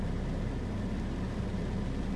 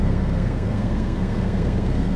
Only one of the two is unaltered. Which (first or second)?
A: first